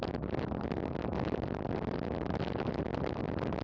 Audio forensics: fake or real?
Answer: real